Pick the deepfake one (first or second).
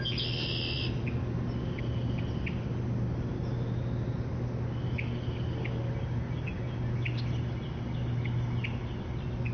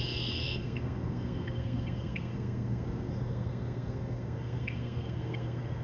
second